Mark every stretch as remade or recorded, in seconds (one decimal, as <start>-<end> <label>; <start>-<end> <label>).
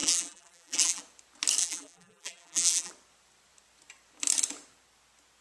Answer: 0.0-1.0 remade; 1.0-1.6 recorded; 1.6-2.9 remade; 2.9-5.4 recorded